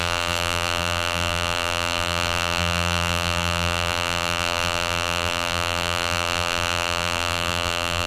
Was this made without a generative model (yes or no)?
no